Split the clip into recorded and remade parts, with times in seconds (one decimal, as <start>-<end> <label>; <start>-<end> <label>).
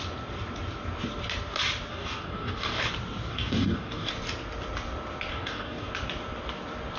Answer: 0.0-1.9 recorded; 1.9-2.9 remade; 2.9-3.3 recorded; 3.3-4.1 remade; 4.1-5.3 recorded; 5.3-5.9 remade; 5.9-7.0 recorded